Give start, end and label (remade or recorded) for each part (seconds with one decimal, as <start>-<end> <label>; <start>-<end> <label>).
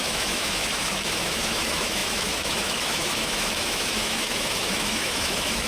0.0-5.7 remade